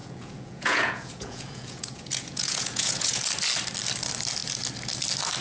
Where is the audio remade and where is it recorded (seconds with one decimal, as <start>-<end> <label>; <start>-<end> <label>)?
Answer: 0.0-3.2 remade; 3.2-5.4 recorded